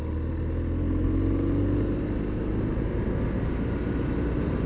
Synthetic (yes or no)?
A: no